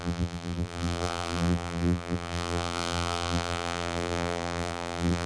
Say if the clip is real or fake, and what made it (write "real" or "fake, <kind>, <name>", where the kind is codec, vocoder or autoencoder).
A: fake, vocoder, BigVGAN v2